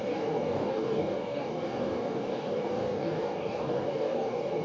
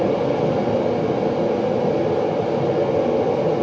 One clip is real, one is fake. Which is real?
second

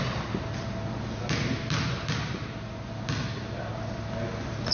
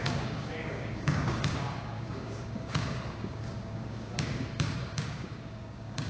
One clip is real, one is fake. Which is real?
first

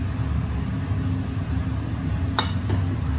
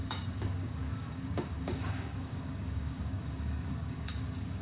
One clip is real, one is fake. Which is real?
first